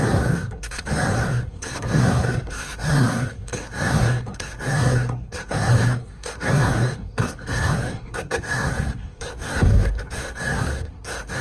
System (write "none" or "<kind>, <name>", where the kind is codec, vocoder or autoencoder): codec, SNAC